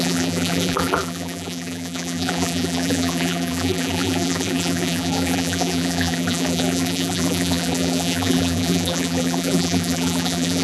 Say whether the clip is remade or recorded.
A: remade